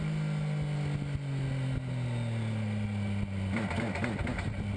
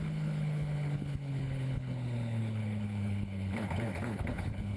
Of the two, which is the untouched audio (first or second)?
first